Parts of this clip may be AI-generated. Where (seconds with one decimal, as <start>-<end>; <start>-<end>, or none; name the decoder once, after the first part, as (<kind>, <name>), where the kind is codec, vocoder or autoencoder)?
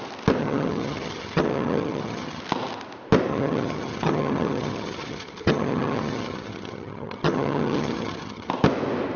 0.4-2.4 (vocoder, HiFi-GAN); 3.3-8.5